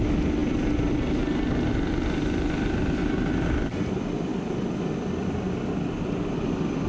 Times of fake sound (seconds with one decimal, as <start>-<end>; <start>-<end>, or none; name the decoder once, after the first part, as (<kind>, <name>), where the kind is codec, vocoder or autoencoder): none